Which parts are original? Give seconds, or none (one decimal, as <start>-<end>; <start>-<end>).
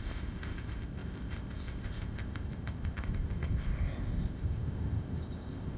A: none